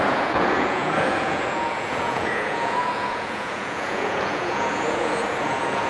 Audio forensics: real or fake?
fake